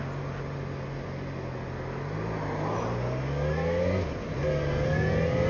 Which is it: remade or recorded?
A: recorded